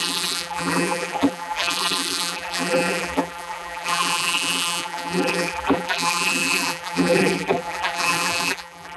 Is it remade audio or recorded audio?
remade